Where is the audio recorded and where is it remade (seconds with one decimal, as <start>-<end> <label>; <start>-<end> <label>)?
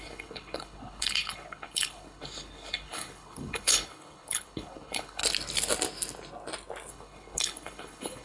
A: 0.0-5.2 remade; 5.2-6.9 recorded; 6.9-8.2 remade